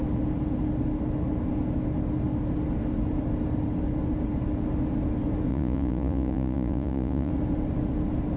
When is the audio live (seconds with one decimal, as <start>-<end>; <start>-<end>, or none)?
0.0-5.5; 7.3-8.4